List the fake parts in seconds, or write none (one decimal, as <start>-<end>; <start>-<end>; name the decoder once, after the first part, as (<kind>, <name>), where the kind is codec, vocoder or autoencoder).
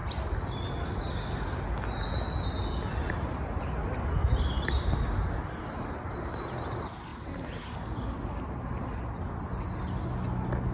none